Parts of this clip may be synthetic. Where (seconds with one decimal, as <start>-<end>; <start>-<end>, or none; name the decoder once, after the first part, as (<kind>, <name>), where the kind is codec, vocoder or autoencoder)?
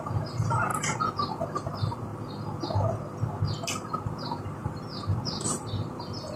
0.0-2.1 (vocoder, BigVGAN v2); 3.7-6.4